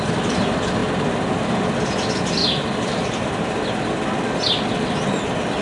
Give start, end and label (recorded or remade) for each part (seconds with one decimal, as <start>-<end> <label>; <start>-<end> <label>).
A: 0.0-2.4 recorded; 2.4-3.6 remade; 3.6-5.6 recorded